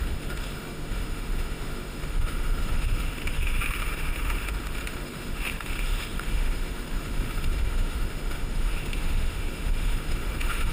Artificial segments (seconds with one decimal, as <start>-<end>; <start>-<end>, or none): 0.0-10.7